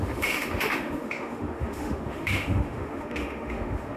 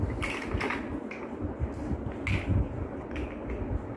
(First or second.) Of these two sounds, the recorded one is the second